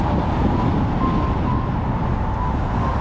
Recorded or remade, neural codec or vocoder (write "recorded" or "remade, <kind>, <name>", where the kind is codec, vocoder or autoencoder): recorded